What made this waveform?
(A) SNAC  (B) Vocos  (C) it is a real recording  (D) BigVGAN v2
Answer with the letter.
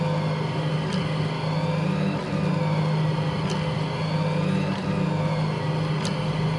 C